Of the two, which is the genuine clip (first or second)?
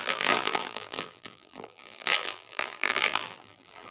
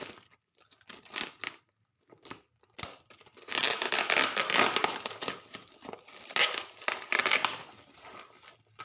second